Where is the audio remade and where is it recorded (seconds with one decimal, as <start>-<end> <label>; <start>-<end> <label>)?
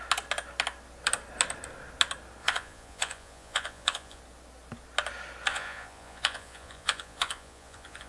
0.0-2.4 recorded; 2.4-4.2 remade; 4.2-5.5 recorded; 5.5-8.1 remade